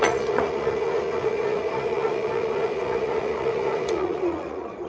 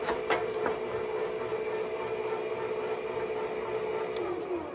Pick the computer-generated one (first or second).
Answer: first